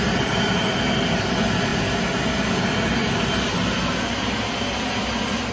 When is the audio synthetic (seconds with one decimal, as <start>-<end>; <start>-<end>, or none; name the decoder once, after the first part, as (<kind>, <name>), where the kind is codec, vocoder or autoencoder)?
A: none